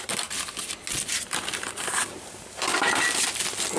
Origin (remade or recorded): recorded